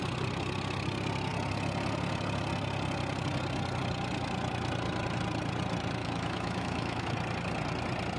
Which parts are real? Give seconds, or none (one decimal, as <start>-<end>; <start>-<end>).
0.0-6.0; 7.1-8.2